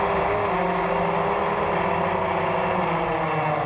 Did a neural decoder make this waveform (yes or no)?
no